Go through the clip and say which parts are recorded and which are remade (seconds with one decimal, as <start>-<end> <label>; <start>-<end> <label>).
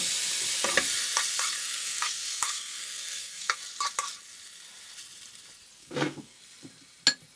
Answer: 0.0-1.6 recorded; 1.6-3.6 remade; 3.6-5.8 recorded; 5.8-6.4 remade; 6.4-7.4 recorded